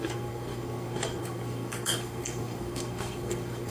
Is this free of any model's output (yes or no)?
no